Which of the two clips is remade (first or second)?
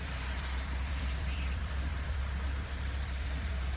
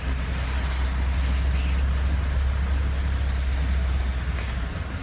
first